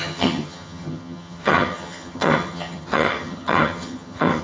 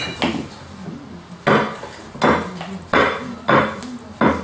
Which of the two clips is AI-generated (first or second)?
first